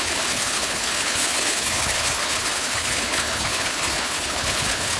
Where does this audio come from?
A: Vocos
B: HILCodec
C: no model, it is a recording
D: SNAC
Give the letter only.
B